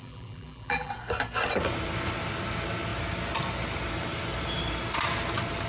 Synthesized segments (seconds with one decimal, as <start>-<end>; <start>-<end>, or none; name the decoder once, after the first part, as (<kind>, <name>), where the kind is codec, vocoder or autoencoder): 0.0-0.9 (vocoder, BigVGAN v2)